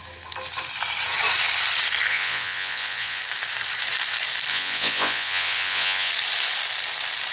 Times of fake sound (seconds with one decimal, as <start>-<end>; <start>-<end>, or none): 2.1-3.2; 4.5-6.1